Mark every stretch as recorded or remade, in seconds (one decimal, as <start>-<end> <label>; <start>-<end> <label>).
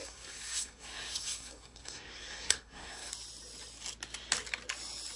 0.0-3.1 remade; 3.1-5.2 recorded